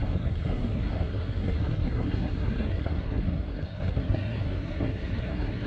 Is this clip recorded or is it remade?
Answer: remade